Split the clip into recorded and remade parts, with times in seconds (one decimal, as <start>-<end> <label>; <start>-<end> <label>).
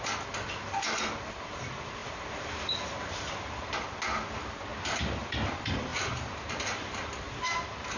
0.0-2.0 recorded; 2.0-3.6 remade; 3.6-4.7 recorded; 4.7-5.3 remade; 5.3-5.9 recorded; 5.9-6.5 remade; 6.5-8.0 recorded